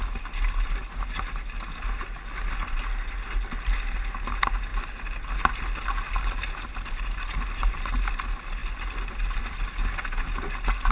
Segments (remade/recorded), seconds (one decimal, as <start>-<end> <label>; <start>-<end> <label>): 0.0-10.9 recorded